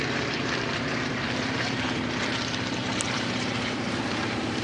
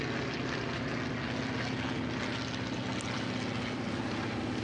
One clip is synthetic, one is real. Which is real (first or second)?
second